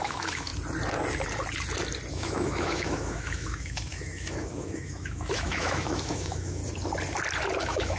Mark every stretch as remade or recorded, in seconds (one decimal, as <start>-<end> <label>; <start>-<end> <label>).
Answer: 0.0-0.5 remade; 0.5-2.1 recorded; 2.1-6.6 remade; 6.6-7.6 recorded; 7.6-8.0 remade

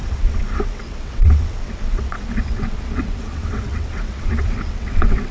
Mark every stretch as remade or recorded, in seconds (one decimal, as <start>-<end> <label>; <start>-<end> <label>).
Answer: 0.0-5.3 remade